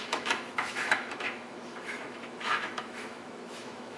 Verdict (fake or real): fake